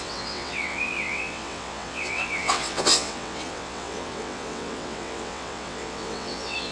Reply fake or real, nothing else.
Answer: fake